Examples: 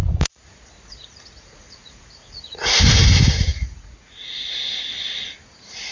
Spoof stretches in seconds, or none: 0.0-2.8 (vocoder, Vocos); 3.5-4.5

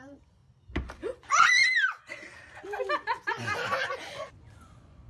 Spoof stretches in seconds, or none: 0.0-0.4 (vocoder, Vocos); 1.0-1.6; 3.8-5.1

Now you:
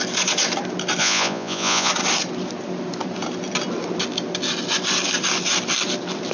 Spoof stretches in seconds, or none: 1.0-1.9 (vocoder, Vocos)

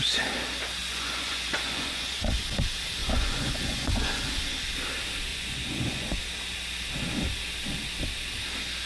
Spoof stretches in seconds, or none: 0.8-2.4 (vocoder, Vocos); 3.0-4.3; 5.3-6.2

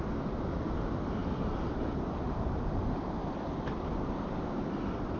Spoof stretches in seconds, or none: none

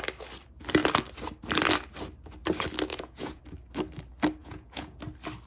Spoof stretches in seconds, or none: 2.9-3.4 (vocoder, Vocos); 4.4-5.0

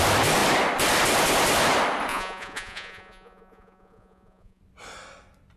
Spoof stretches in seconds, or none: 2.1-4.6 (vocoder, Vocos)

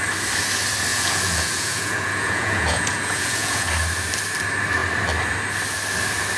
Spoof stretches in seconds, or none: 0.9-3.7 (vocoder, Vocos)